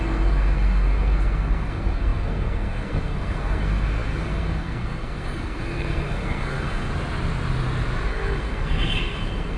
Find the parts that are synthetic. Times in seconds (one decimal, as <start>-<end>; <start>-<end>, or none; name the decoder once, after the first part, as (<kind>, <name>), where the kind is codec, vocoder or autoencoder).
0.0-6.9 (codec, SNAC); 8.1-9.6